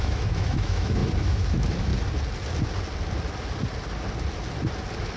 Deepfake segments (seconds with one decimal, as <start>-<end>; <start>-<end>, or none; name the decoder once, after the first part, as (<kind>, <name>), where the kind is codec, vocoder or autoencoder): 0.0-1.9 (autoencoder, DAC-VAE)